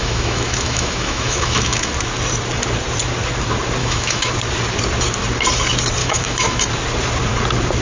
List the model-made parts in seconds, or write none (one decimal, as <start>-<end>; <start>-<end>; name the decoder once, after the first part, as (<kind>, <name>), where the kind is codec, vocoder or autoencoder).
0.0-1.9 (autoencoder, DAC-VAE); 3.8-4.3; 6.0-6.6